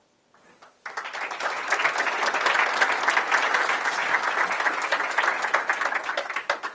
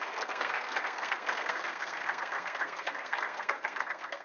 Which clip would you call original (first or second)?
first